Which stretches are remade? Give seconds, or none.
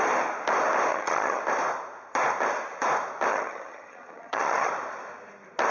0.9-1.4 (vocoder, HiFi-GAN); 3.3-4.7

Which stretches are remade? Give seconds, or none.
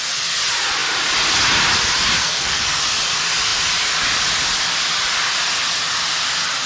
2.2-2.8 (codec, SNAC)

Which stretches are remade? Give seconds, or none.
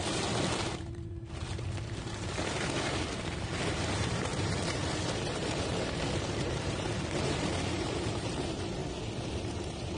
0.0-8.8 (vocoder, BigVGAN v2); 9.3-10.0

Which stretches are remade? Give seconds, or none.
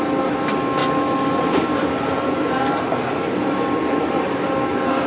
0.8-3.9 (vocoder, BigVGAN v2)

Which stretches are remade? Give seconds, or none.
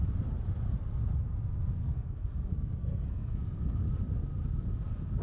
1.8-3.9 (codec, SNAC)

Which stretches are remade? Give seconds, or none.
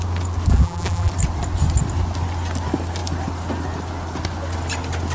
0.5-1.1 (vocoder, BigVGAN v2)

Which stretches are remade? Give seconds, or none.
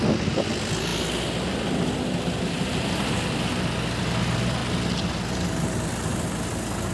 none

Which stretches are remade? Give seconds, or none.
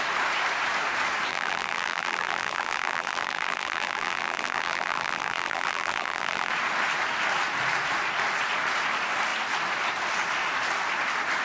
1.3-6.5 (vocoder, BigVGAN v2)